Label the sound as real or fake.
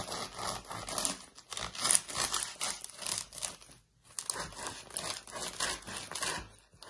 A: real